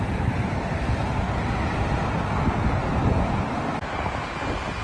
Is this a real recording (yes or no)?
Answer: yes